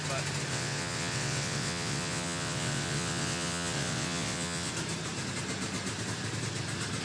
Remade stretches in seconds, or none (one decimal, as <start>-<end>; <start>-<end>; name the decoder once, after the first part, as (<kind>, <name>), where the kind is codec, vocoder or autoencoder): 0.5-4.7 (vocoder, WaveNeXt)